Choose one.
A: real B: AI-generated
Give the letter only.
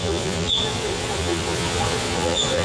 B